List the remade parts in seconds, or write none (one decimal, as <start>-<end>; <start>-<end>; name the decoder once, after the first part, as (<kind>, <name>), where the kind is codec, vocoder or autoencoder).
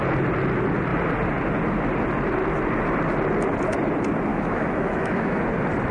4.3-5.4 (autoencoder, DAC-VAE)